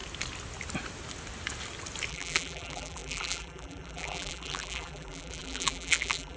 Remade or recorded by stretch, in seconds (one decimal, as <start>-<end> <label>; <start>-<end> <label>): 0.0-2.1 recorded; 2.1-6.4 remade